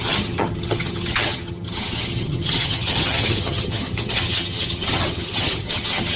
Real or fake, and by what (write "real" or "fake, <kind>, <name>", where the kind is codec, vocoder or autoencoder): fake, vocoder, HiFi-GAN